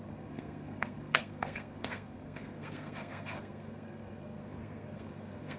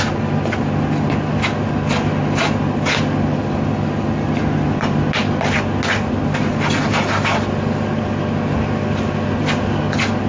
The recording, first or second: second